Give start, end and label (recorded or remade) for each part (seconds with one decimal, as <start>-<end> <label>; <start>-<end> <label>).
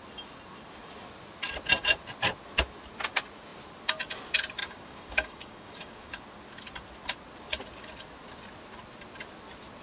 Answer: 0.0-4.6 recorded; 4.6-6.2 remade; 6.2-9.8 recorded